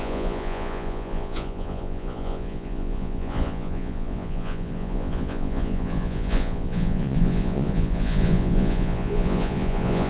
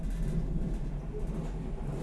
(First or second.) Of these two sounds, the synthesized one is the first